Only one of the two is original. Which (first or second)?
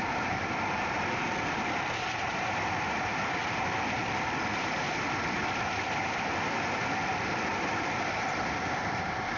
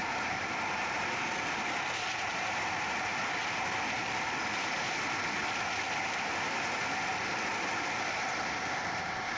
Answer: second